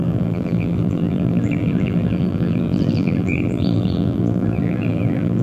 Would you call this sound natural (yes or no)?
no